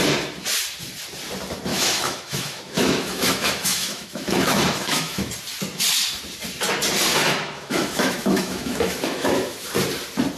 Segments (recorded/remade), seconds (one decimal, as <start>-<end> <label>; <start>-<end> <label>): 0.0-1.7 recorded; 1.7-5.3 remade; 5.3-7.1 recorded; 7.1-9.7 remade; 9.7-10.4 recorded